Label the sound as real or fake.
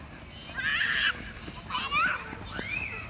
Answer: real